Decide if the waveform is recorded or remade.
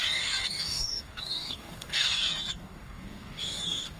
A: remade